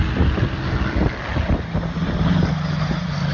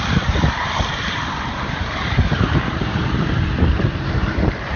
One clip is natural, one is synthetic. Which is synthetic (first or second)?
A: second